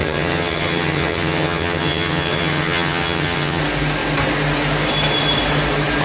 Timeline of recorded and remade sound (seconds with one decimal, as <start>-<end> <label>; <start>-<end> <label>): 0.0-3.6 remade; 3.6-6.0 recorded

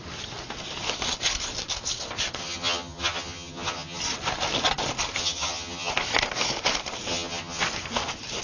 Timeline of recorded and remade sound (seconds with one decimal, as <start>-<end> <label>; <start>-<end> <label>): 0.0-2.4 recorded; 2.4-4.0 remade; 4.0-5.2 recorded; 5.2-5.9 remade; 5.9-7.1 recorded; 7.1-7.6 remade; 7.6-8.4 recorded